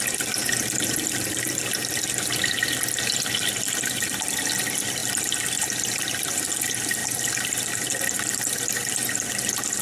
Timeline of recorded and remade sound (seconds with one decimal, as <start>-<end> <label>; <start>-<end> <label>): 0.0-5.0 recorded; 5.0-6.0 remade; 6.0-9.8 recorded